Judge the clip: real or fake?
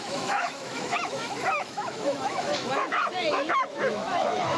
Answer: fake